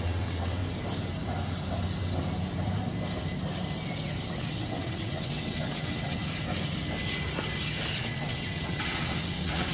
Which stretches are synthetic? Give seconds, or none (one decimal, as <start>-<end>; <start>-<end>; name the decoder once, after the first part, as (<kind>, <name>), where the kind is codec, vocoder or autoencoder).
0.0-0.6 (vocoder, WaveNeXt); 4.3-6.2; 8.0-9.7